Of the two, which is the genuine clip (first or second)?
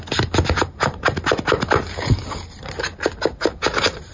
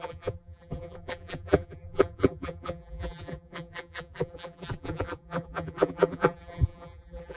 first